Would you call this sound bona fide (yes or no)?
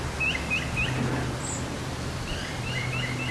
yes